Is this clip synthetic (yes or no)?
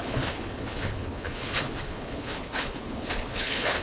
yes